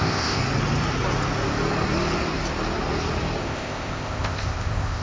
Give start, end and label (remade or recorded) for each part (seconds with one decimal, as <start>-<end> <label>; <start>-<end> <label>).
0.0-0.4 remade; 0.4-3.4 recorded; 3.4-5.0 remade